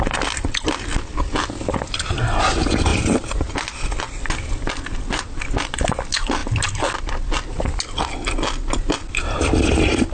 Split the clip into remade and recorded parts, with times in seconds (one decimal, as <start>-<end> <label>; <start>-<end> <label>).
0.0-10.1 recorded